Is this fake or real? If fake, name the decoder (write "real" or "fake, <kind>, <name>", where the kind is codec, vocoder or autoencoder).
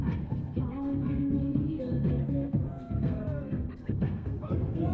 fake, codec, SNAC